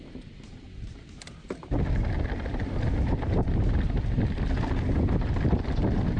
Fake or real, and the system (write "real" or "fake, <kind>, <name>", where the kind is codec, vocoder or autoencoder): real